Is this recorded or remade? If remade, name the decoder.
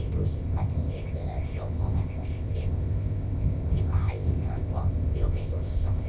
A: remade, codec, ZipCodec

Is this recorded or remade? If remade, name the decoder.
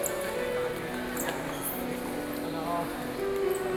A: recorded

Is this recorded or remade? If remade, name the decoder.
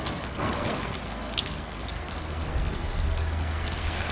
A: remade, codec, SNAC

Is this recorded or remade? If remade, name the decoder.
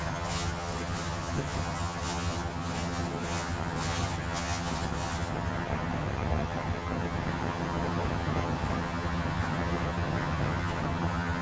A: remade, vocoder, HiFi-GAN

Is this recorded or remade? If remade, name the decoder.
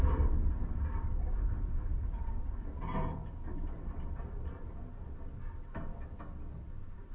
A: recorded